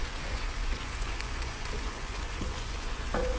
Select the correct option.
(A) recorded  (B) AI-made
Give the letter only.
B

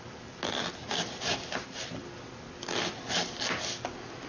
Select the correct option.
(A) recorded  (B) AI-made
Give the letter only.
A